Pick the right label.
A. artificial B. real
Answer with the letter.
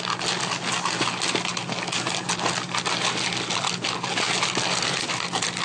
B